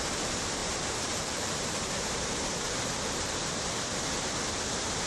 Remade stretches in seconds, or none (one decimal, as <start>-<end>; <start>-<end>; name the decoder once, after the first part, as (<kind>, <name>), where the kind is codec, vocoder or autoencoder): 0.6-3.7 (vocoder, BigVGAN v2)

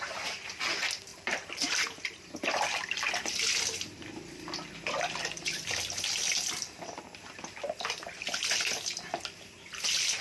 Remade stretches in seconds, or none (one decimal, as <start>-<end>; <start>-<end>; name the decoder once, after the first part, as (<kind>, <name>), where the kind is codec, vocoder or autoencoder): 1.1-3.1 (vocoder, BigVGAN v2); 4.0-8.5

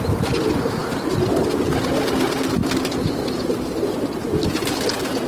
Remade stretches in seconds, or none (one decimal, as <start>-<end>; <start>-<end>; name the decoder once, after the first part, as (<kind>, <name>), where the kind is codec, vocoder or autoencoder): 2.6-3.9 (vocoder, BigVGAN v2)

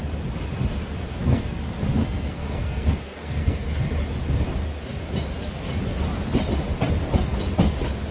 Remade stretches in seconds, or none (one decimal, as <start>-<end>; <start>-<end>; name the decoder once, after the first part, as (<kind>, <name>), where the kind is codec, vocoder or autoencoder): 1.1-1.6 (codec, SNAC); 2.0-3.8

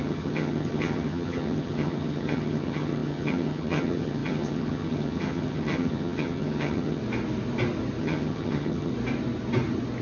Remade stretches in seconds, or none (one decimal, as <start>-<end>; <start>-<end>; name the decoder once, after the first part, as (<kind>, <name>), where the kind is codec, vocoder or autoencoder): 0.0-7.0 (vocoder, HiFi-GAN); 8.0-8.9

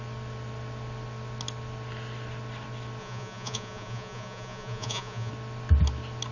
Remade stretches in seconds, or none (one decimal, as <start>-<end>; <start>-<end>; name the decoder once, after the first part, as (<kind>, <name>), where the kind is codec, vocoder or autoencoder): 3.0-5.3 (vocoder, Vocos)

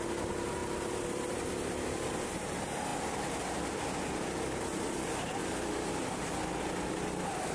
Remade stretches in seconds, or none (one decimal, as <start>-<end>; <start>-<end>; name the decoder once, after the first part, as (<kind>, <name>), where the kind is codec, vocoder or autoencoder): 0.6-2.3 (vocoder, BigVGAN v2); 2.9-3.9; 5.4-6.6

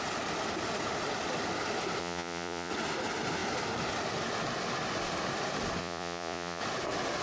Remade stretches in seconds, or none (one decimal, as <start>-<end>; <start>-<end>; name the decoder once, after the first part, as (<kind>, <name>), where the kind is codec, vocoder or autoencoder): 2.0-2.7 (vocoder, Vocos); 5.8-6.6